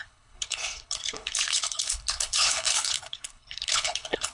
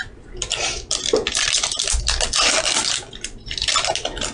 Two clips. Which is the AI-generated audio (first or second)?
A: first